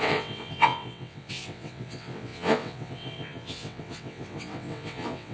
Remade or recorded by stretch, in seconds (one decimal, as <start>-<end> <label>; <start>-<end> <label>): 0.0-5.3 remade